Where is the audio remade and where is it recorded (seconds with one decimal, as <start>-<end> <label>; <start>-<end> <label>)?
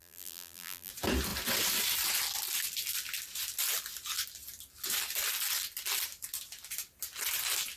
0.0-0.9 remade; 0.9-7.8 recorded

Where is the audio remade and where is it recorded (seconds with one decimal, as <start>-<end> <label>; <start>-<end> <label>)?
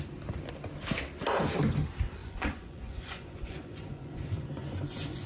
0.0-2.2 recorded; 2.2-5.3 remade